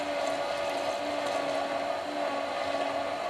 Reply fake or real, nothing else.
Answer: real